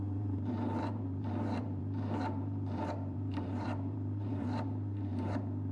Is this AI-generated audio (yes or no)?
yes